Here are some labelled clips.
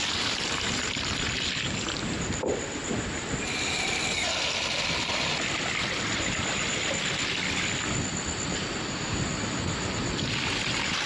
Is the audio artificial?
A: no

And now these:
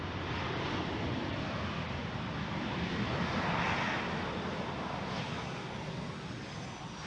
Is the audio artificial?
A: no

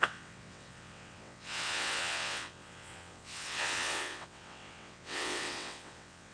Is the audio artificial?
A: yes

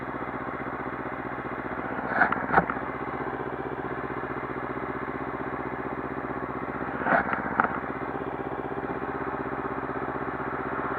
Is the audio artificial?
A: no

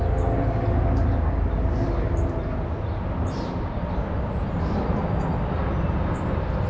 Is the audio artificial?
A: no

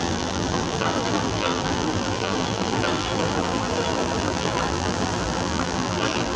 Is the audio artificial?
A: yes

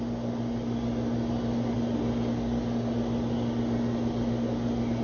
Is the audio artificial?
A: no